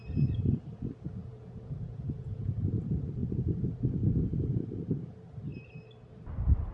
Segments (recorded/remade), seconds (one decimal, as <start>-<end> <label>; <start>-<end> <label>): 0.0-1.2 recorded; 1.2-2.6 remade; 2.6-6.7 recorded